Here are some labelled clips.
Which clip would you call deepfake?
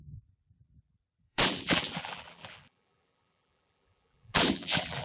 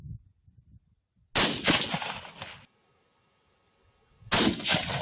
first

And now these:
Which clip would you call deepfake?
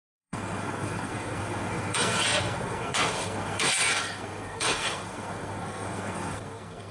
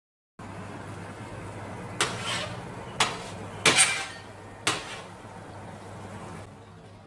first